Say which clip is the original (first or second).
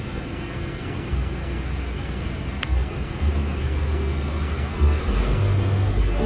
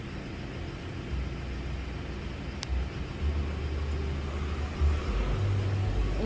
second